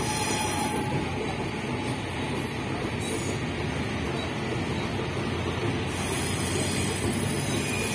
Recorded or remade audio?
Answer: recorded